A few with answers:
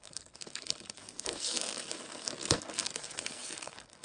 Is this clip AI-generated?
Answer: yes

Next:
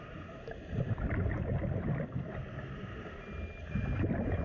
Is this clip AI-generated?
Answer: no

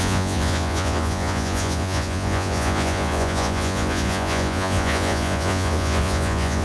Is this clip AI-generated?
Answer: yes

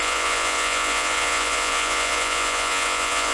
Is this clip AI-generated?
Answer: yes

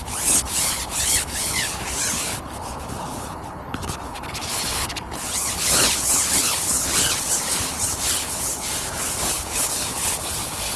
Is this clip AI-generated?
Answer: yes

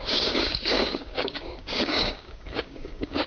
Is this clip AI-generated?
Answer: yes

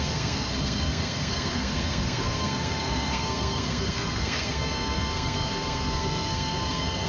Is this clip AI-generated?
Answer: yes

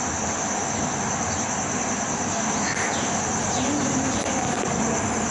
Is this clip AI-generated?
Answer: no